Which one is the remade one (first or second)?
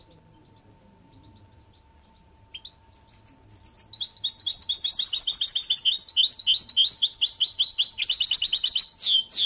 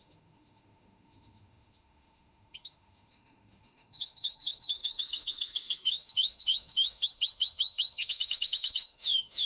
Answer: second